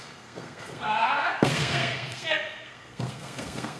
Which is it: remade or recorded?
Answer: remade